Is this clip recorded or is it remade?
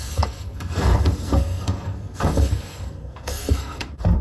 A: remade